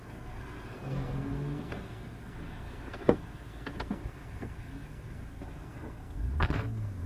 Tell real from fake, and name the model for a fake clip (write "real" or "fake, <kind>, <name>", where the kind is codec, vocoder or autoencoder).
fake, codec, SNAC